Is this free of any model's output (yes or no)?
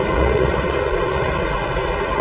no